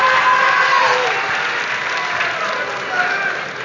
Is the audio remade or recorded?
recorded